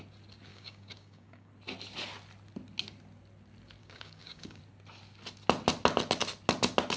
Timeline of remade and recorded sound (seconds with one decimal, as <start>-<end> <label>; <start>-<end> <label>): 0.0-0.5 recorded; 0.5-1.5 remade; 1.5-3.8 recorded; 3.8-4.6 remade; 4.6-7.0 recorded